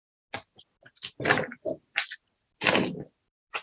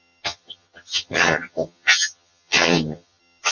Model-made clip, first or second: second